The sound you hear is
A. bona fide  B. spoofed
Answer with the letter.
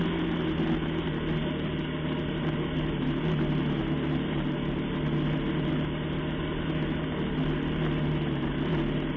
A